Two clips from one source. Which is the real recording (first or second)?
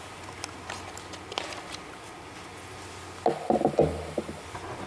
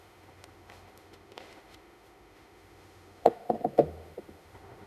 first